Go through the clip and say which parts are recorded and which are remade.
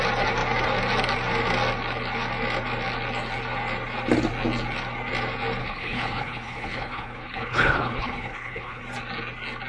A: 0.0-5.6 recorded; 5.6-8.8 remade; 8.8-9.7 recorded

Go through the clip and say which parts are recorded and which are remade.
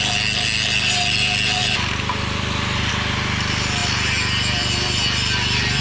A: 0.0-1.6 recorded; 1.6-2.9 remade; 2.9-3.8 recorded; 3.8-5.8 remade